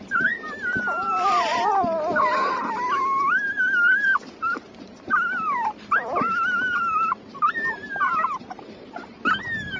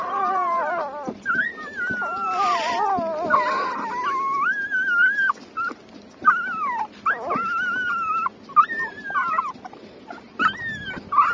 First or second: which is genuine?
second